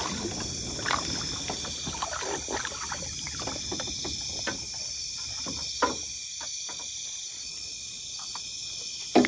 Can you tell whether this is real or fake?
real